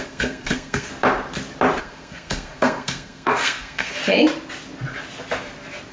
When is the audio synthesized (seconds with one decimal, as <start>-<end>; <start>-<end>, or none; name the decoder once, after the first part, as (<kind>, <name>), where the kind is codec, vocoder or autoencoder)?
0.0-0.9 (codec, SNAC); 1.8-4.0

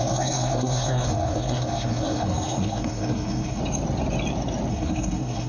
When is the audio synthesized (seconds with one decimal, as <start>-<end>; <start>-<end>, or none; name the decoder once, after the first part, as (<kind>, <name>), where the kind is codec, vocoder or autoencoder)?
0.0-3.6 (codec, SNAC); 4.7-5.5